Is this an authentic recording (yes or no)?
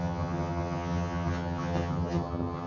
no